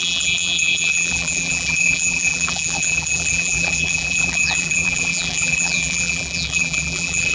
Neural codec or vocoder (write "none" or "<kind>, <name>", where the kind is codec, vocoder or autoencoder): vocoder, BigVGAN v2